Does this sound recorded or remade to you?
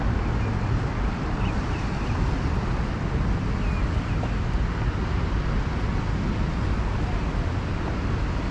recorded